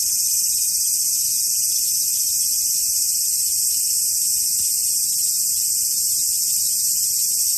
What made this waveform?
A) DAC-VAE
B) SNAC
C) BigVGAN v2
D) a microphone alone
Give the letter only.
C